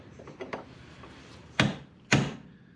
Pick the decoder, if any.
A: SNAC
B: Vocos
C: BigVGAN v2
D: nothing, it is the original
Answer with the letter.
C